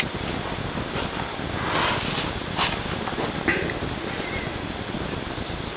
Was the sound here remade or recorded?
recorded